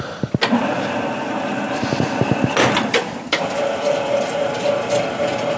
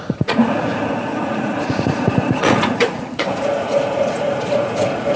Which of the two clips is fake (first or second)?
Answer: second